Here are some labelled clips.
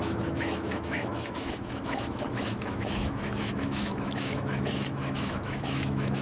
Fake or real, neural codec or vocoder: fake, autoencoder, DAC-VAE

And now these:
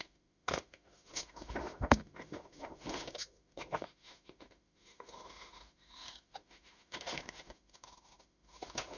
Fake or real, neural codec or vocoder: fake, autoencoder, DAC-VAE